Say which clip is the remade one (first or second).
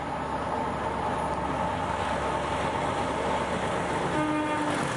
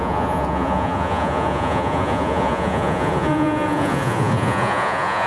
second